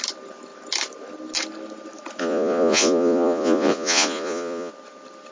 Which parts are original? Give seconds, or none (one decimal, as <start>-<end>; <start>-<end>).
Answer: 0.0-2.2; 4.7-5.3